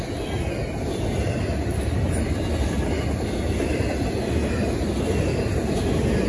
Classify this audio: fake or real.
real